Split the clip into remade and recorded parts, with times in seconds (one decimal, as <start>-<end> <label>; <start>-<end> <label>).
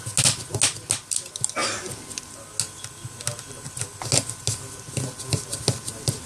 0.0-6.3 recorded